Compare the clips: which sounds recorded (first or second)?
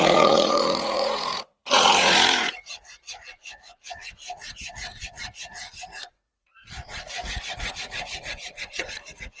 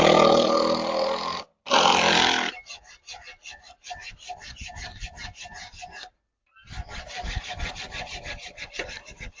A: second